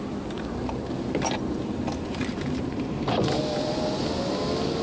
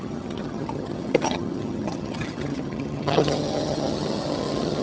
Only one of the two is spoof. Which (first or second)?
second